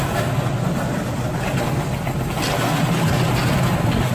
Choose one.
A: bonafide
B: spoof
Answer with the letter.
A